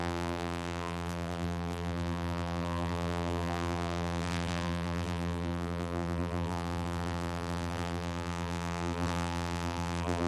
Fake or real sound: fake